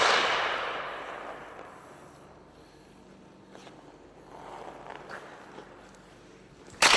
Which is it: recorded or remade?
recorded